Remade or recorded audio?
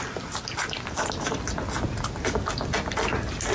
recorded